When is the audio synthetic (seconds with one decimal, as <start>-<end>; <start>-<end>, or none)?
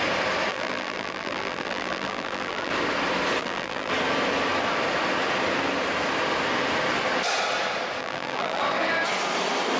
0.5-2.7; 3.4-3.9; 8.0-8.6